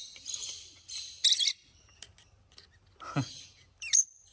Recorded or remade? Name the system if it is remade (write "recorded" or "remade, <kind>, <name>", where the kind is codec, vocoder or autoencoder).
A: recorded